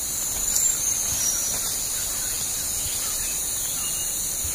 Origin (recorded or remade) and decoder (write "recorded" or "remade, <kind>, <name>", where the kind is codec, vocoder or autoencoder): recorded